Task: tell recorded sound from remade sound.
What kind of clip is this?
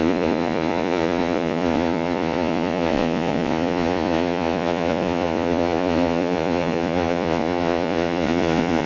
remade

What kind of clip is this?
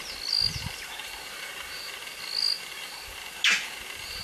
recorded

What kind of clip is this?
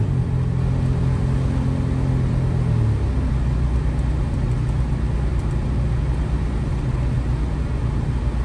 recorded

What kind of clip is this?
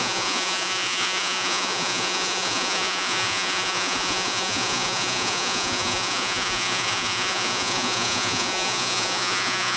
remade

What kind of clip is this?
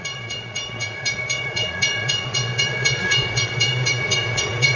remade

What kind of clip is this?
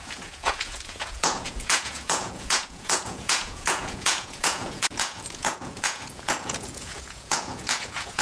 remade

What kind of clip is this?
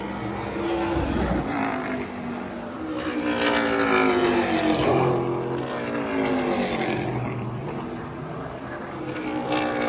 recorded